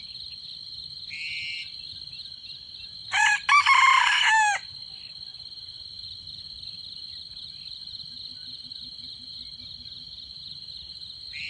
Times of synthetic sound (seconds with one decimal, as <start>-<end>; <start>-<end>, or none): none